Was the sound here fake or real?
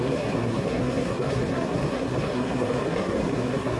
fake